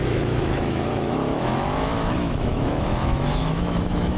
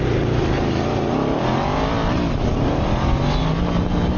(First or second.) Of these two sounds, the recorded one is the second